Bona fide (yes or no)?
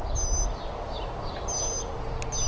yes